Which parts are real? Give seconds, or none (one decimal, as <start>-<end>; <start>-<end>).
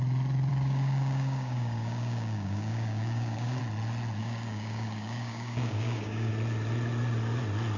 0.0-0.5; 3.6-4.2; 6.3-7.8